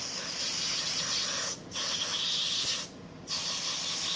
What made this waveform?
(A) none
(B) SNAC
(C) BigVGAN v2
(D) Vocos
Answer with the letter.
A